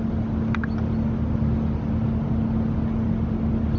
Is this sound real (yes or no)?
yes